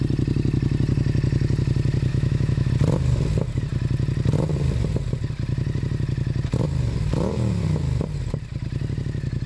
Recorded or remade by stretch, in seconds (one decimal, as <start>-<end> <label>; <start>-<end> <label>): 0.0-2.1 recorded; 2.1-2.7 remade; 2.7-9.5 recorded